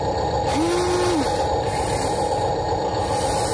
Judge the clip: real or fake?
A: real